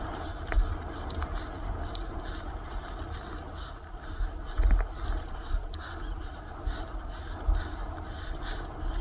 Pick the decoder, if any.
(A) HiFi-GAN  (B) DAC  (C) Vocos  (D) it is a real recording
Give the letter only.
D